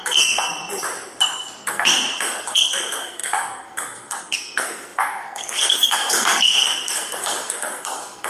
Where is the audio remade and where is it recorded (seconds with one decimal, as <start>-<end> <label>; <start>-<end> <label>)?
0.0-0.6 remade; 0.6-1.7 recorded; 1.7-8.3 remade